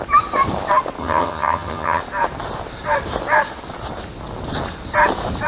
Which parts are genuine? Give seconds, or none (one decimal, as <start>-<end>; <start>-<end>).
0.0-1.0; 2.0-5.5